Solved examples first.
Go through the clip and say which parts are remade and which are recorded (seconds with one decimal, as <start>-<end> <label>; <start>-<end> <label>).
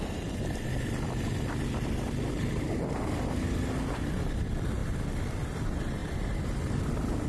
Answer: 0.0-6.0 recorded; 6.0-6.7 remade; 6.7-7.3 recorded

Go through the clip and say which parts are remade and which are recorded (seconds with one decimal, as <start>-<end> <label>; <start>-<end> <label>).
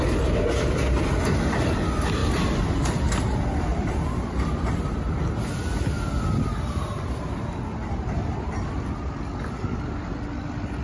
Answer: 0.0-2.2 recorded; 2.2-3.2 remade; 3.2-3.7 recorded; 3.7-5.5 remade; 5.5-10.8 recorded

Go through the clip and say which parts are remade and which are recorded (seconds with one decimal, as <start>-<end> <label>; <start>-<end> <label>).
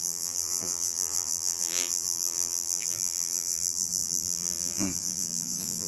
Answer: 0.0-5.9 remade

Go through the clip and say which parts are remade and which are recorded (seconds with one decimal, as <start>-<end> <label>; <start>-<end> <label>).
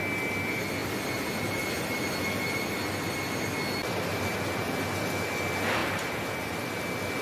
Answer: 0.0-0.8 recorded; 0.8-1.6 remade; 1.6-5.8 recorded; 5.8-6.8 remade; 6.8-7.2 recorded